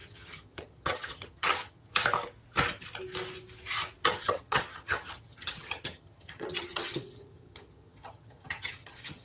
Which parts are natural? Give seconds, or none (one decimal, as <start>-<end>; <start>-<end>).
1.9-4.1